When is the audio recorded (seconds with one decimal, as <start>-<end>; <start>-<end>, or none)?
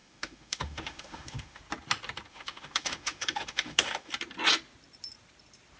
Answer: 1.6-2.3; 4.1-5.8